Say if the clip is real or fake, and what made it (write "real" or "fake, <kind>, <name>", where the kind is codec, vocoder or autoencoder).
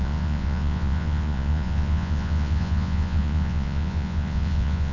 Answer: fake, vocoder, Vocos